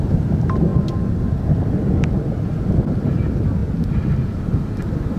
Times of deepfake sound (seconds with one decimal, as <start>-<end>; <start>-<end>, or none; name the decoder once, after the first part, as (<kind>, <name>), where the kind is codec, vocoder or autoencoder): none